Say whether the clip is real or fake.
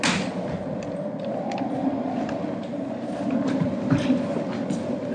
real